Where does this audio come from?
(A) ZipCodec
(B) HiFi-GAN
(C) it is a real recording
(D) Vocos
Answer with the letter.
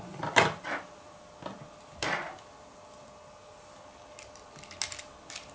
C